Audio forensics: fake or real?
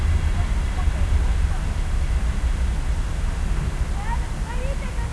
real